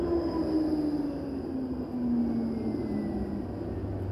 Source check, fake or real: real